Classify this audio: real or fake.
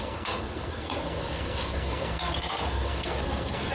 fake